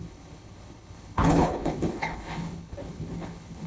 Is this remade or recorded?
remade